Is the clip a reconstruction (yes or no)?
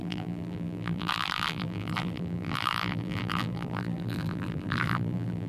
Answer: yes